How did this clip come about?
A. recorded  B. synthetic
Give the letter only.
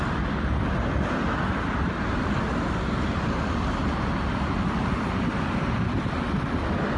A